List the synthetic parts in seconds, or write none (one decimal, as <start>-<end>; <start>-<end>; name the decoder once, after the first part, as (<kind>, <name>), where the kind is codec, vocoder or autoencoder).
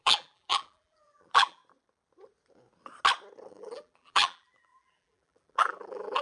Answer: 0.0-1.6 (vocoder, BigVGAN v2); 3.5-6.2